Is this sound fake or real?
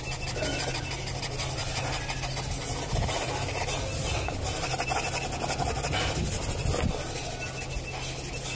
real